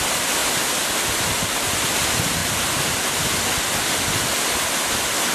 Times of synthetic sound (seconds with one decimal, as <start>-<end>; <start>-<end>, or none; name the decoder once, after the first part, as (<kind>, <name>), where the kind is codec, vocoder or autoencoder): 0.4-1.5 (vocoder, BigVGAN v2)